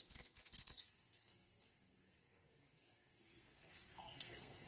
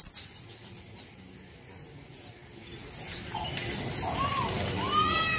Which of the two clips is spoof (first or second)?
first